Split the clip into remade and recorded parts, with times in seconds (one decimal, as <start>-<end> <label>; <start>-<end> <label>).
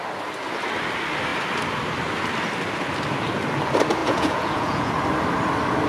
0.0-4.0 recorded; 4.0-4.9 remade; 4.9-5.9 recorded